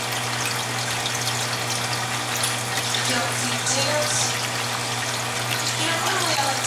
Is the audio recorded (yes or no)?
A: yes